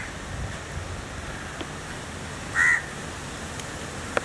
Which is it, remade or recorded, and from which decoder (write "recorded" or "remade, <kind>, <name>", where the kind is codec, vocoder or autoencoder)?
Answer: recorded